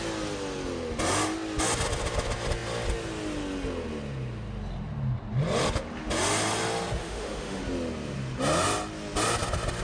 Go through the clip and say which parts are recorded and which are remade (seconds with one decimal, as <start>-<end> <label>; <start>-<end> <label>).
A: 0.0-7.0 recorded; 7.0-7.6 remade; 7.6-9.8 recorded